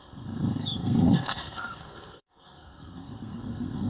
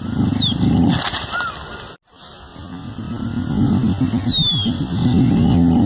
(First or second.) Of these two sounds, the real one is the second